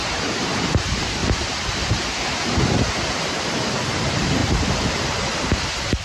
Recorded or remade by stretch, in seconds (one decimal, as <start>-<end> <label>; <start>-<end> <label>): 0.0-1.2 remade; 1.2-3.7 recorded; 3.7-4.4 remade; 4.4-4.9 recorded; 4.9-6.0 remade